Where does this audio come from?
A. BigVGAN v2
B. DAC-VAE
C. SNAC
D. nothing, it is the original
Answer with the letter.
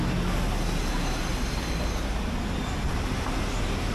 D